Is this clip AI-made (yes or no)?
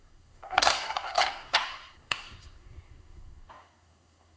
yes